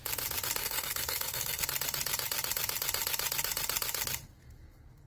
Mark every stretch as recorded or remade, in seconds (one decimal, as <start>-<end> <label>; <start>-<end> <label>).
0.0-0.6 recorded; 0.6-1.6 remade; 1.6-5.1 recorded